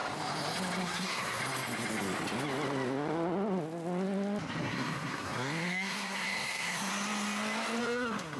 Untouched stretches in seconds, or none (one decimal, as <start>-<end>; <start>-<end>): 0.0-0.8; 1.4-4.6; 6.9-7.8